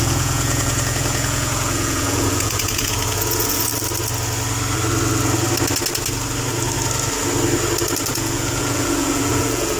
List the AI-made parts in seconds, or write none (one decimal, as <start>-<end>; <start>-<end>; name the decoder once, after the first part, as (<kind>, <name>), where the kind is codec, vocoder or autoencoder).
0.0-3.7 (vocoder, Vocos); 8.1-9.8